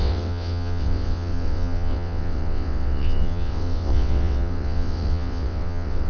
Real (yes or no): no